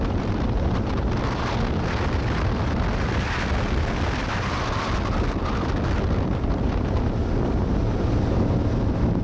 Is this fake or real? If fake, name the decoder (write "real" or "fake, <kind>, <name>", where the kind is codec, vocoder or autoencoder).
real